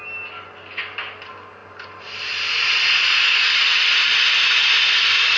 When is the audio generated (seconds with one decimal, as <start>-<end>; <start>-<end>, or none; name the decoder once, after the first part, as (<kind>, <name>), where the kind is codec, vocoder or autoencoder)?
none